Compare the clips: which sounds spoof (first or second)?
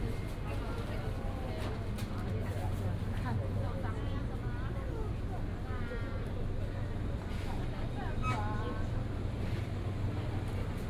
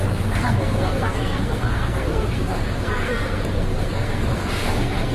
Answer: second